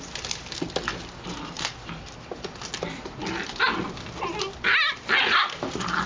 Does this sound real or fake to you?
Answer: real